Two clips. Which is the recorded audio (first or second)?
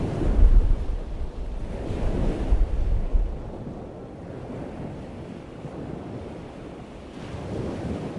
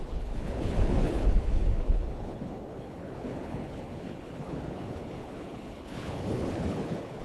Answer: first